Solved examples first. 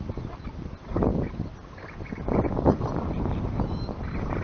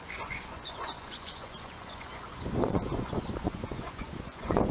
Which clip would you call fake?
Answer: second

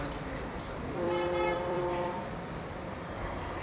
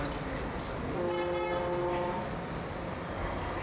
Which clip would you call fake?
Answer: first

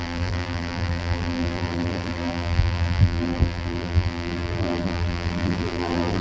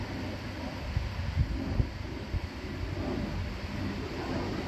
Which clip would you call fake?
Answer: first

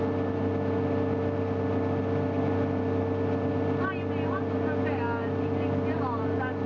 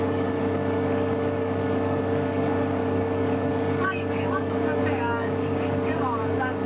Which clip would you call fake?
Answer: second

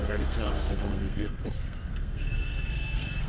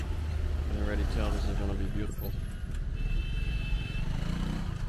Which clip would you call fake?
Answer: first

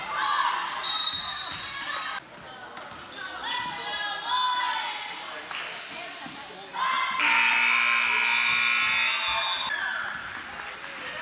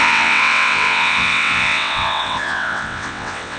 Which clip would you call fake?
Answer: second